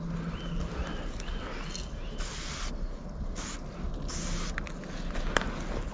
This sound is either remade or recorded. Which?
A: recorded